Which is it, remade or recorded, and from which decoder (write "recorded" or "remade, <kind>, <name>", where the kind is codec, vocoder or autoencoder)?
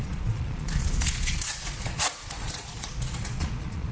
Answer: remade, vocoder, Vocos